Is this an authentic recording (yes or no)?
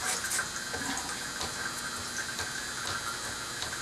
yes